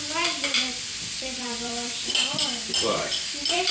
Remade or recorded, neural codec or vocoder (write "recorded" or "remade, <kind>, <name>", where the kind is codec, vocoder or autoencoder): remade, vocoder, BigVGAN v2